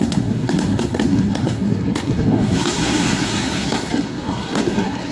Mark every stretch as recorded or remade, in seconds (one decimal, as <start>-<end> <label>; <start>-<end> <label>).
0.0-5.1 remade